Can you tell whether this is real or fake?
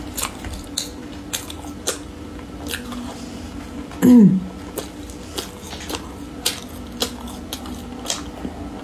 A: real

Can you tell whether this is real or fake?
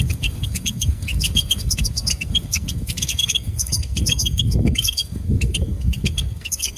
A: fake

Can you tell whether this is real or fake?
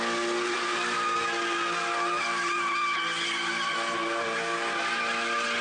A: real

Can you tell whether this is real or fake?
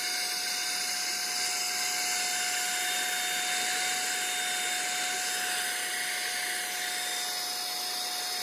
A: real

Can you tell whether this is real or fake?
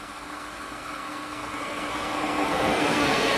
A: fake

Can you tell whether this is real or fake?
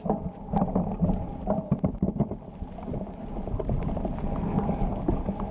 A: real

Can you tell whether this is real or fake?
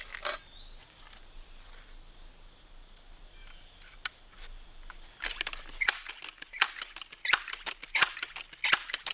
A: real